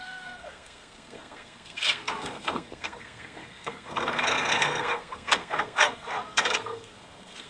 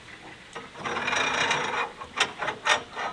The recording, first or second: second